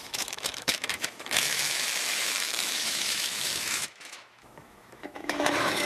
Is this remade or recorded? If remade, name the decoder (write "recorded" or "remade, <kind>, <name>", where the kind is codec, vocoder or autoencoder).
remade, autoencoder, DAC-VAE